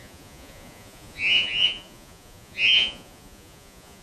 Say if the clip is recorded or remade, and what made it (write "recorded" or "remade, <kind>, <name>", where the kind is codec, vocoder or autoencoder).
remade, vocoder, Vocos